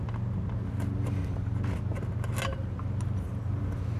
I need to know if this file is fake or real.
real